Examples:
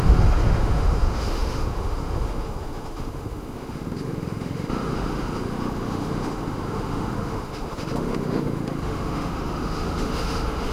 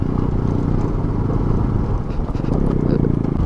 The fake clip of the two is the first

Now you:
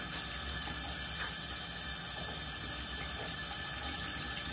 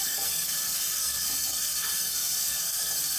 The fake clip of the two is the second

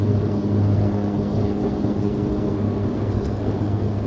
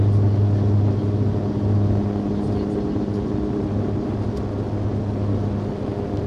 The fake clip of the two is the first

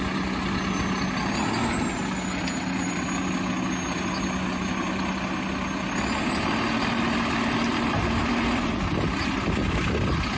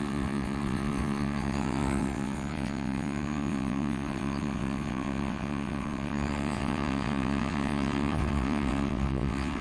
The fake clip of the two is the second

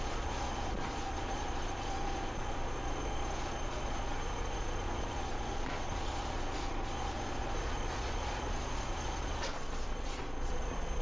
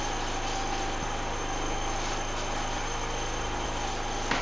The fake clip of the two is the first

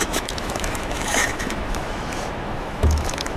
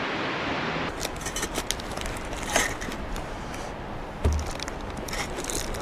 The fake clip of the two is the first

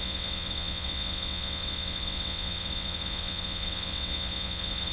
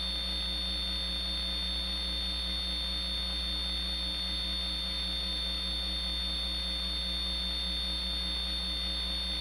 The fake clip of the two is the first